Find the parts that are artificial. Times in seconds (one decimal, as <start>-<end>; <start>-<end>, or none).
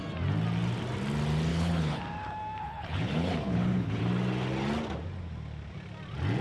1.5-2.0; 2.6-4.0